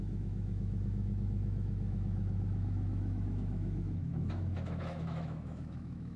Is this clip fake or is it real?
fake